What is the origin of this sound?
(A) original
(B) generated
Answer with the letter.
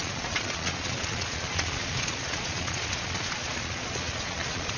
B